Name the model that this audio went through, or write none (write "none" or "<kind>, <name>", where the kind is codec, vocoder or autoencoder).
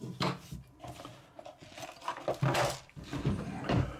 none